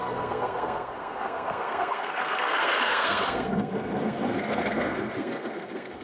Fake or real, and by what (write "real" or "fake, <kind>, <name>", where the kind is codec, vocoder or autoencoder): fake, codec, SNAC